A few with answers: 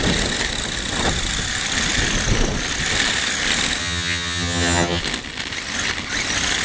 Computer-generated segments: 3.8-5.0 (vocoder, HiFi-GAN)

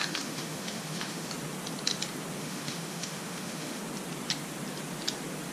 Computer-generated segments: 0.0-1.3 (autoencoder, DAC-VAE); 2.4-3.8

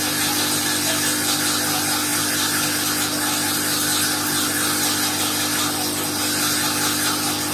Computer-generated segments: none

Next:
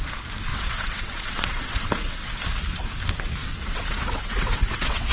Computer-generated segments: 0.5-2.3 (vocoder, WaveNeXt); 3.4-5.1

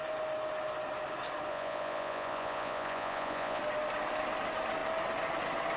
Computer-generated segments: 1.5-3.6 (vocoder, Vocos)